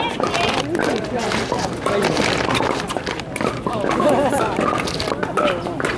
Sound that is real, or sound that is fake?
real